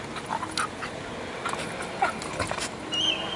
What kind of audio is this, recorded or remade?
recorded